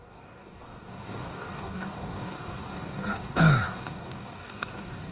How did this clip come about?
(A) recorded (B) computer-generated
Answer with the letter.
B